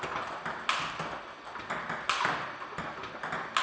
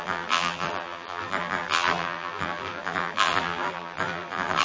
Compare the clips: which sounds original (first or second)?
first